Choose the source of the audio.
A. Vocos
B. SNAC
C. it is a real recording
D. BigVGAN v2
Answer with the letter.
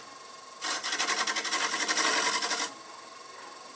D